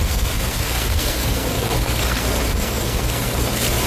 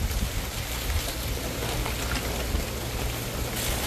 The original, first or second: second